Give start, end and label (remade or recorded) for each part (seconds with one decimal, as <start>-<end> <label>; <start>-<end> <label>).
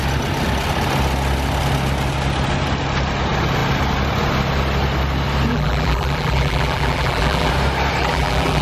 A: 0.0-5.5 recorded; 5.5-7.5 remade; 7.5-8.0 recorded; 8.0-8.6 remade